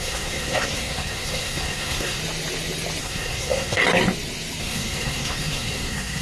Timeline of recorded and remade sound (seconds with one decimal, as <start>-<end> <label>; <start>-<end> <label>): 0.0-2.2 remade; 2.2-3.0 recorded; 3.0-3.8 remade; 3.8-4.6 recorded; 4.6-6.2 remade